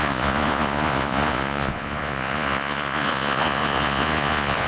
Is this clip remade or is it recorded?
remade